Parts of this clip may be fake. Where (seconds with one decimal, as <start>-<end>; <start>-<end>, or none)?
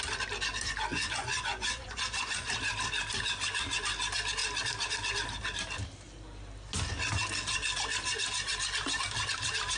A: 0.9-2.5